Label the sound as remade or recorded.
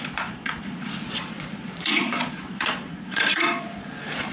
remade